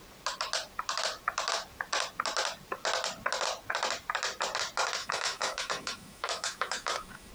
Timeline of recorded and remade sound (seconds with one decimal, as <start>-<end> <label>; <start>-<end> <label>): 0.0-5.0 recorded; 5.0-7.3 remade